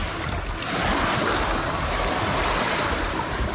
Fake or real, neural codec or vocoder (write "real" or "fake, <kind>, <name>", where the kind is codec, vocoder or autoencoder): real